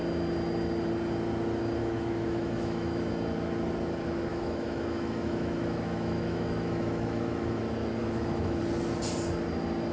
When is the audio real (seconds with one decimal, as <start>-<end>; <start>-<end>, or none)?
0.0-1.8; 3.1-4.3; 7.6-8.0; 8.6-9.9